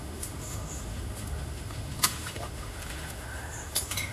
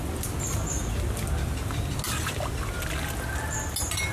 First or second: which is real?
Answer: second